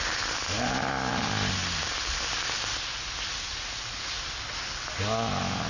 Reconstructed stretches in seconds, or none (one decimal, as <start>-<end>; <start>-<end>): none